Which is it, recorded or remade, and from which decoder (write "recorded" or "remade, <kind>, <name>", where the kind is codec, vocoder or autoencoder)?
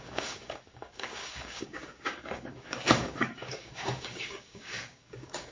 remade, codec, DAC